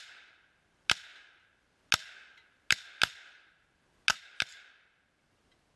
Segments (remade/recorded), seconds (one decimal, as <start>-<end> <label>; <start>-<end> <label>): 0.0-5.8 recorded